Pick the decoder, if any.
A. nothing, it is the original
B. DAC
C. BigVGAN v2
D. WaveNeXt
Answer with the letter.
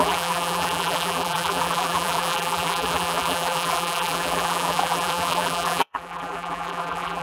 C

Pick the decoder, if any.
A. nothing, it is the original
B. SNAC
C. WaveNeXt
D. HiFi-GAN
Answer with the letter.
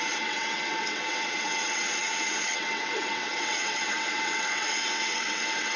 C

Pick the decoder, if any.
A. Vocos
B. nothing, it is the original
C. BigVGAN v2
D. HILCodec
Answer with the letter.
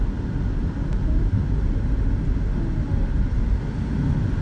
B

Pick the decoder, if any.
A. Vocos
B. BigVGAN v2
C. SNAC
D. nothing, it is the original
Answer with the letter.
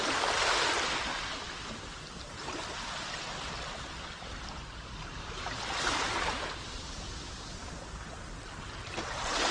D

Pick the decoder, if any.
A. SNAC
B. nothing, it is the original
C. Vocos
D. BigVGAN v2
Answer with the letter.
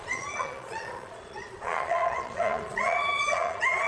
C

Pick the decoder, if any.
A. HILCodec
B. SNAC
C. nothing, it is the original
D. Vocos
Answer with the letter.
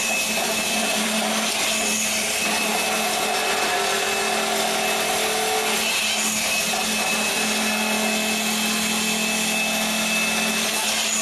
C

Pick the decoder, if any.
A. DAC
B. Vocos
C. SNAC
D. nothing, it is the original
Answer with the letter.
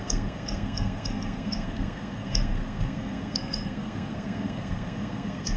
C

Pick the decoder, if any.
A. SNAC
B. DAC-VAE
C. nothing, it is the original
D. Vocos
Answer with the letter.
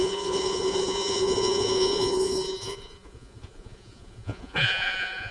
D